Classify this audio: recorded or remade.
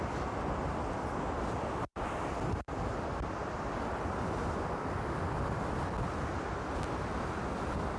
recorded